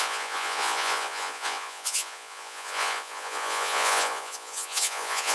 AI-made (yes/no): yes